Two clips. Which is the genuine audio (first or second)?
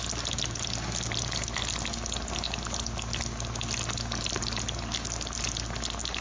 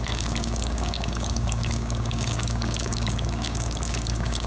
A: first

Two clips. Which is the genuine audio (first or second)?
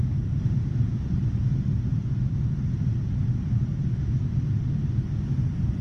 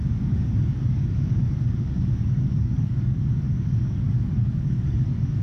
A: first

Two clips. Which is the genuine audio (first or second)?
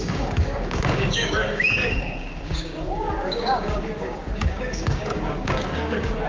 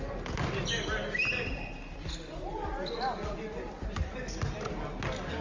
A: second